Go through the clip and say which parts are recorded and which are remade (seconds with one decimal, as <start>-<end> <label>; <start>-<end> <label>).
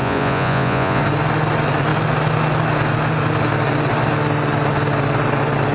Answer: 0.0-1.0 remade; 1.0-5.7 recorded